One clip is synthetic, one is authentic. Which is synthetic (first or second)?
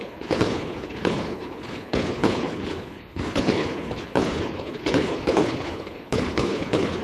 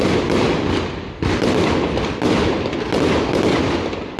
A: first